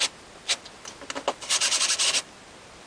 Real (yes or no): yes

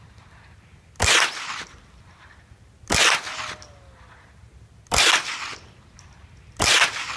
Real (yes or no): yes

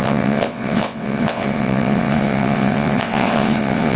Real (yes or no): no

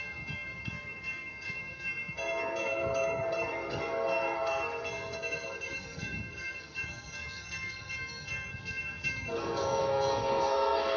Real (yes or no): no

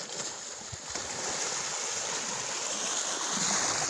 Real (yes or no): yes